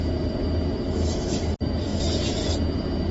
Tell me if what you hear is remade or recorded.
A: recorded